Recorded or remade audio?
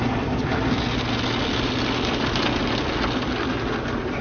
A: recorded